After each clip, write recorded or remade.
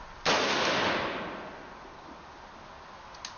recorded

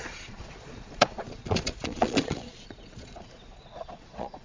remade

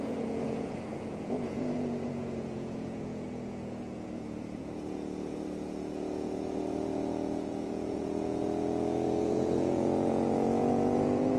remade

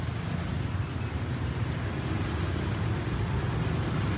recorded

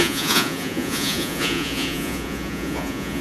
remade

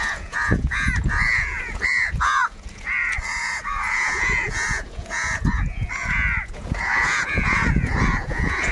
remade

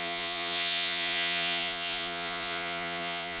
remade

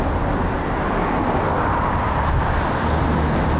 recorded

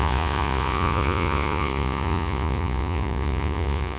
remade